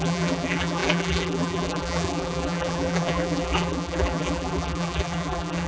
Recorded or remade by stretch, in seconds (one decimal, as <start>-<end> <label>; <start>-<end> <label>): 0.0-5.7 remade